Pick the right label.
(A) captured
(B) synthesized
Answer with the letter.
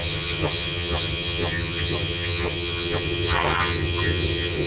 B